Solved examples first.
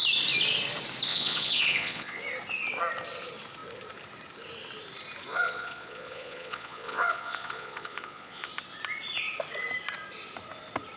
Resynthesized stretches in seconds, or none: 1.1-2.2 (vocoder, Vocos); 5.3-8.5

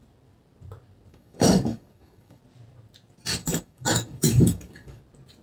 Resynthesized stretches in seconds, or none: 1.1-2.4 (codec, DAC); 3.4-5.0

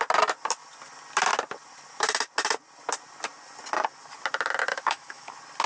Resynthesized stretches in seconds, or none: 4.7-5.3 (autoencoder, DAC-VAE)

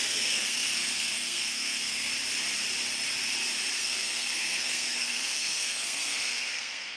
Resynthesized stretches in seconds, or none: 0.0-2.1 (codec, SNAC); 3.8-7.0

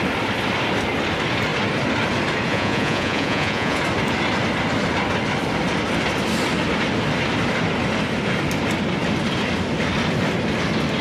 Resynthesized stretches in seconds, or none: 2.5-3.8 (vocoder, Vocos)

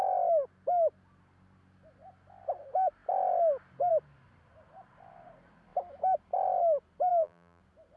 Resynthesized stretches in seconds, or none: 7.1-7.6 (vocoder, BigVGAN v2)

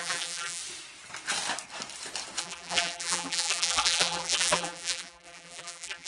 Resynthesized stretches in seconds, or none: 0.0-0.6 (vocoder, BigVGAN v2); 2.4-6.1

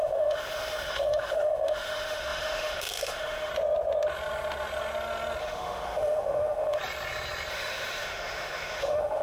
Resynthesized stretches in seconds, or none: 0.0-3.5 (autoencoder, DAC-VAE); 5.4-6.8; 7.5-9.2